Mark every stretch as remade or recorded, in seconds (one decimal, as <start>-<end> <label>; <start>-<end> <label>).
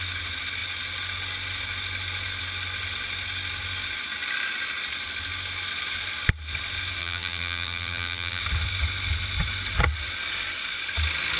0.0-7.0 recorded; 7.0-8.4 remade; 8.4-11.4 recorded